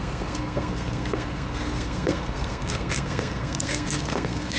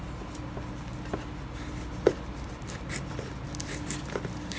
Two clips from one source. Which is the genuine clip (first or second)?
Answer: second